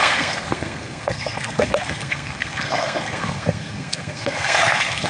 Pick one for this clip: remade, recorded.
remade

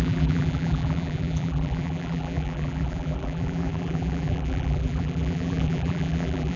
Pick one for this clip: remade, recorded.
remade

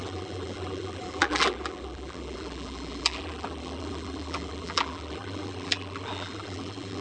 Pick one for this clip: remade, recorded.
remade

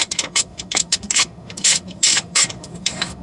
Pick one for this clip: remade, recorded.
remade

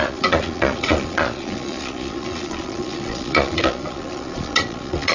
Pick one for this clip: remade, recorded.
remade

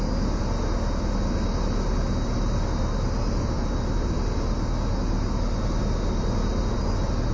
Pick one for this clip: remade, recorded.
recorded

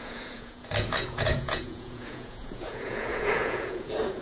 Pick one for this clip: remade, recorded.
remade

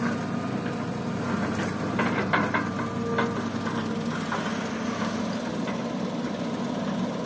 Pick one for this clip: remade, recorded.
recorded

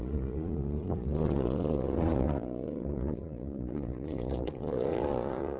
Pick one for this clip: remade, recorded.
remade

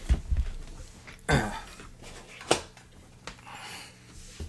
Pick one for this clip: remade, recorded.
recorded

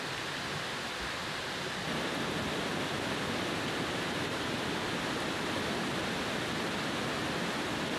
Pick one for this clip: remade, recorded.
recorded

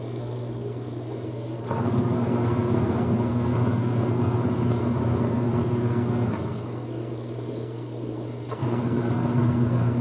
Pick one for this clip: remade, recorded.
remade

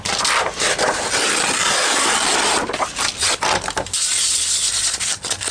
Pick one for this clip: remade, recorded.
recorded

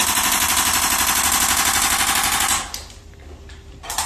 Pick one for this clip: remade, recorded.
recorded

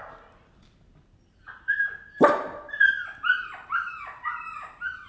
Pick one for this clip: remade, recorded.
remade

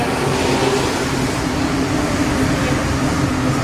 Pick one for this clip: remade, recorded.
recorded